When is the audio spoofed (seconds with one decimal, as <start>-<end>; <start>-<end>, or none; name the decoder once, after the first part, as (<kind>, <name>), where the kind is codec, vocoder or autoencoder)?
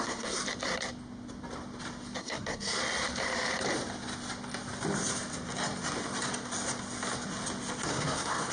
0.0-0.4 (codec, SNAC); 2.2-2.8; 7.9-8.5